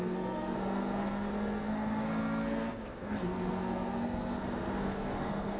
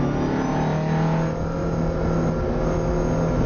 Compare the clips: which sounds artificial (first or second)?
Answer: first